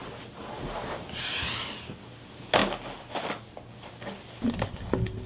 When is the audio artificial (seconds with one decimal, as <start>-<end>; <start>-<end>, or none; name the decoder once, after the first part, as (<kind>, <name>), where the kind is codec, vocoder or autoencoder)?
none